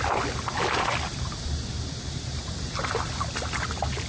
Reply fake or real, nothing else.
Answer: real